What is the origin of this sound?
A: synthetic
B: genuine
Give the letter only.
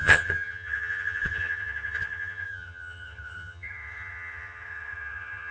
A